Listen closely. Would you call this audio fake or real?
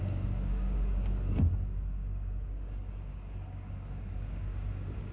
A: fake